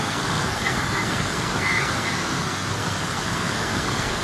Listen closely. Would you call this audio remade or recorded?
remade